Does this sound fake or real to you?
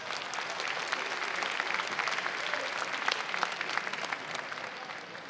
real